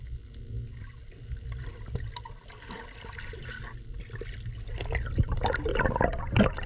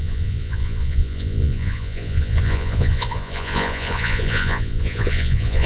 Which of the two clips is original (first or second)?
first